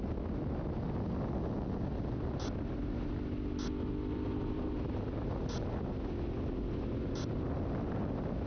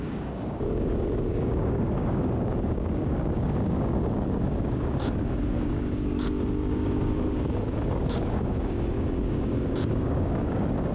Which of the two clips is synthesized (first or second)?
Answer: second